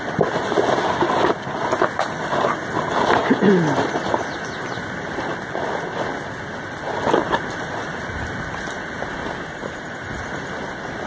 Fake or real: real